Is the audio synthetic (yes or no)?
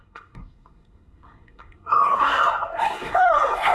yes